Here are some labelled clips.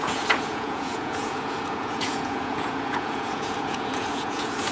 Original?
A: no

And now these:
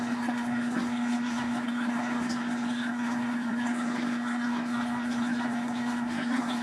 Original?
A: no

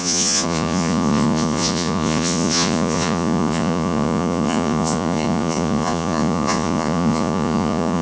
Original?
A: no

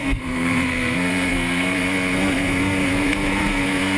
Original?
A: no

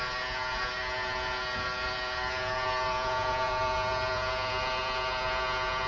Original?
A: no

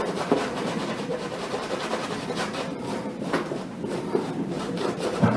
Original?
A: no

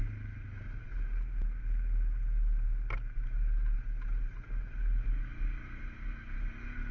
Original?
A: yes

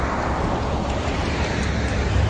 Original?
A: yes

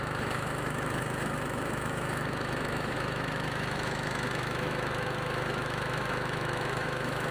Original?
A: no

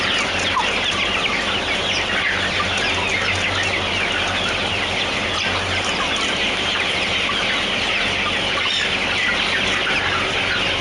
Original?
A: yes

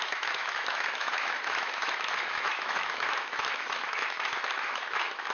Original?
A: no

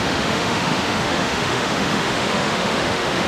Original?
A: no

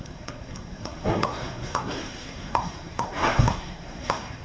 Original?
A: no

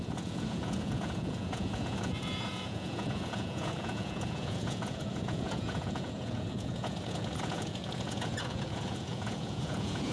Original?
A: no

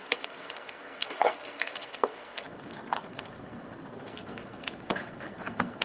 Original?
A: no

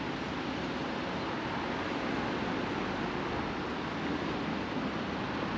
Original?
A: yes